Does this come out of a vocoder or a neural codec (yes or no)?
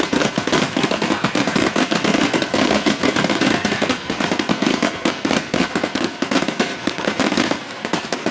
yes